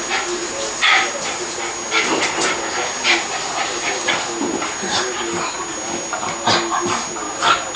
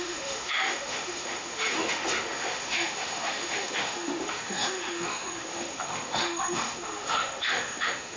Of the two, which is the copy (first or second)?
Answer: second